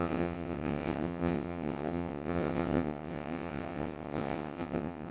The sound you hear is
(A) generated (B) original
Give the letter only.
A